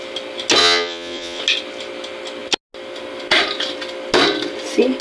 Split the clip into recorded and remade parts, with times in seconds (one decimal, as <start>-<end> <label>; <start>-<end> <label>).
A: 0.0-0.6 recorded; 0.6-1.4 remade; 1.4-5.0 recorded